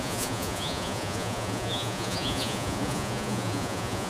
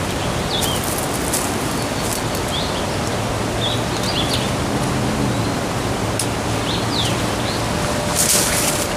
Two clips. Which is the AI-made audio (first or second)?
first